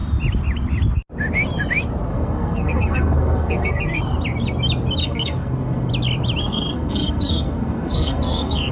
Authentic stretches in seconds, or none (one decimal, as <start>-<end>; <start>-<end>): 0.0-2.1; 4.0-5.0; 5.9-6.4